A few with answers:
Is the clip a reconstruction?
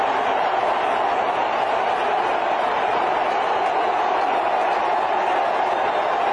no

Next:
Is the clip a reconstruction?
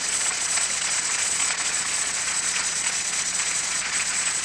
yes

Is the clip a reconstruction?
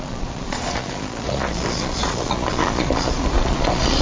yes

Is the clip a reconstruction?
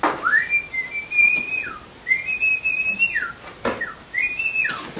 no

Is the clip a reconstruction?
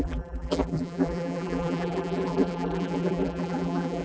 yes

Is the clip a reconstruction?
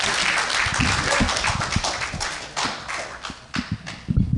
no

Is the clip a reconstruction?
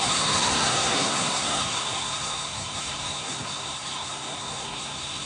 yes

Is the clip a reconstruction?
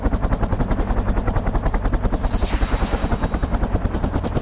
yes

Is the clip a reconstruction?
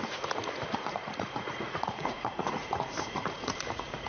yes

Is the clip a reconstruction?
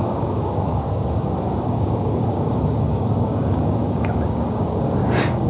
yes